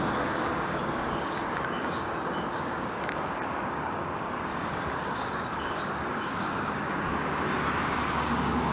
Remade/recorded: remade